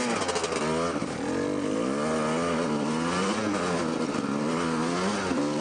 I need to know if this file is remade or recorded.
recorded